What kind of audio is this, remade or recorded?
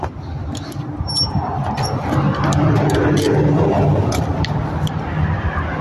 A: recorded